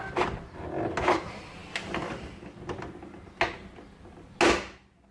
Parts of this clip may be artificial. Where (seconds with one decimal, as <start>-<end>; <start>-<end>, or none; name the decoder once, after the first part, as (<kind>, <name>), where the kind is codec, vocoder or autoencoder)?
none